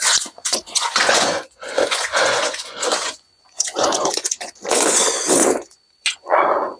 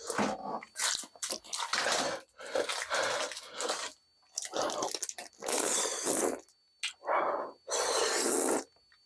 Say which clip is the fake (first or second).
first